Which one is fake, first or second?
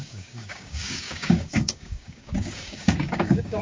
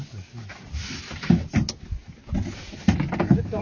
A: first